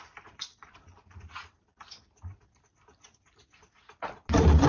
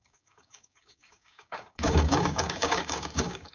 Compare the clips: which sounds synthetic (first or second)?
second